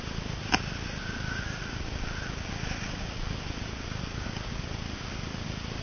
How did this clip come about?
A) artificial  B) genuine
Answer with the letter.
B